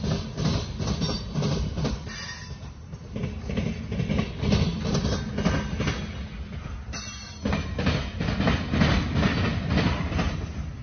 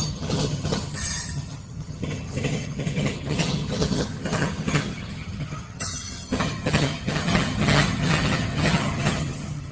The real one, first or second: first